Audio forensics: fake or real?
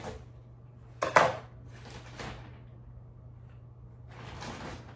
real